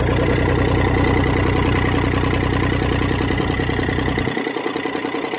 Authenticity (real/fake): real